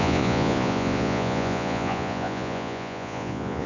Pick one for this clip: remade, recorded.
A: remade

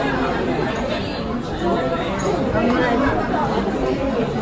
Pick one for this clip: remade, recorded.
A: recorded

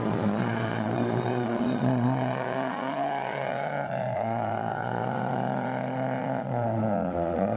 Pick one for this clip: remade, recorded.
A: remade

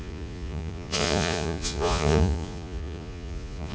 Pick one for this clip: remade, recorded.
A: remade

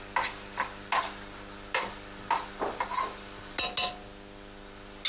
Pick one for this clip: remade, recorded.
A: recorded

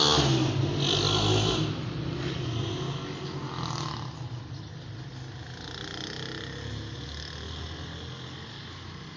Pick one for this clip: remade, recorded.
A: recorded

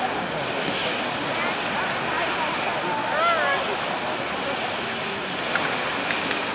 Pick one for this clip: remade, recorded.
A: recorded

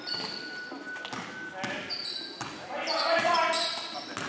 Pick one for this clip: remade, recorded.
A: recorded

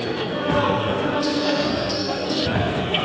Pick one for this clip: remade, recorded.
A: remade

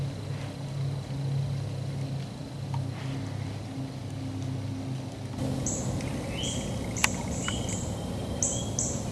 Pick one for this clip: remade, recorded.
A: recorded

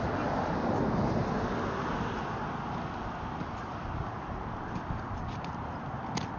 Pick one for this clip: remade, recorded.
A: recorded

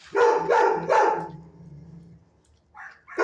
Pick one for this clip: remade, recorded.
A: recorded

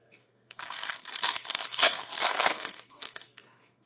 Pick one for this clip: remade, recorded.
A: remade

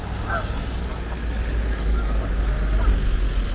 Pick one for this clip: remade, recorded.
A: recorded